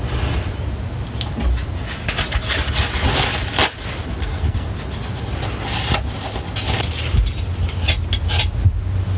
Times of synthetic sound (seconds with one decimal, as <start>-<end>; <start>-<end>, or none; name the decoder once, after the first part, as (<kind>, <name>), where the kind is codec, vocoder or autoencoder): 4.2-4.7 (codec, SNAC)